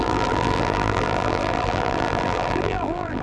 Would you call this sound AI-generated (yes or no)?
yes